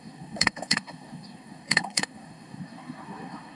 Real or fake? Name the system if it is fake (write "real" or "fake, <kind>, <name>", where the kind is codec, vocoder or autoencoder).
fake, codec, SNAC